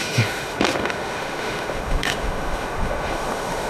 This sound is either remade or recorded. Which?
remade